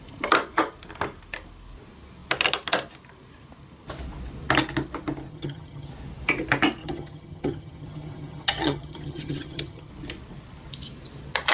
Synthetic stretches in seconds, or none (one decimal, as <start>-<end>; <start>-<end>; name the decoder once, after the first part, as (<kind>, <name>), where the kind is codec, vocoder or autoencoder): 5.3-5.9 (vocoder, HiFi-GAN); 6.8-9.9